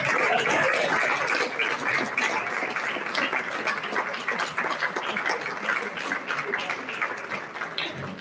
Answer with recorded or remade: recorded